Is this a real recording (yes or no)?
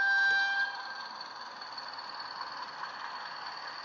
yes